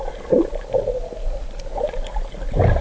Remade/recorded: recorded